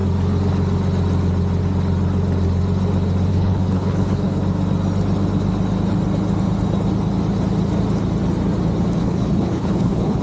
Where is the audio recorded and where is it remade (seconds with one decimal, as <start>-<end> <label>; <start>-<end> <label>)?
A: 0.0-3.3 recorded; 3.3-4.4 remade; 4.4-9.0 recorded; 9.0-10.2 remade